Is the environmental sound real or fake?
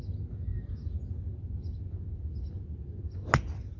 real